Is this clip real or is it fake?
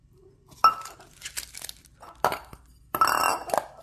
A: real